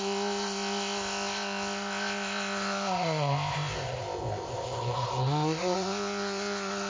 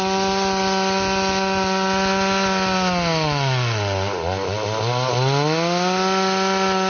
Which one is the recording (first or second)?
second